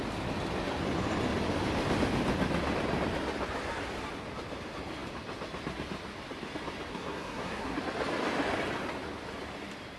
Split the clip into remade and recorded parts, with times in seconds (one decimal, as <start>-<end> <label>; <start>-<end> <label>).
0.0-6.9 recorded; 6.9-7.8 remade; 7.8-10.0 recorded